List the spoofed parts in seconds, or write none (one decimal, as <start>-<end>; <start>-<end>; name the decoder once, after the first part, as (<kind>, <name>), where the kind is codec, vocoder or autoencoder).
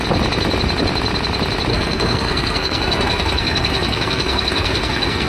1.7-5.3 (codec, SNAC)